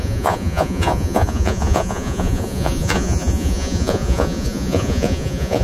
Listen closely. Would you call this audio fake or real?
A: fake